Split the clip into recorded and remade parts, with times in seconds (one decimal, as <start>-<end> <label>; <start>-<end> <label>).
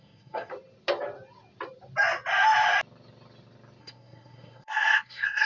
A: 0.0-0.5 remade; 0.5-3.8 recorded; 3.8-5.5 remade